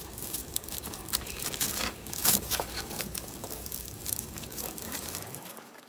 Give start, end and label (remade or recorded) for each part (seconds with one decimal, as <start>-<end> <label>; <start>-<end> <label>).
0.0-5.9 remade